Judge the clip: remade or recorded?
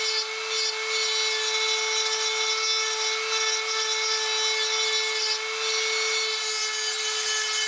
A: recorded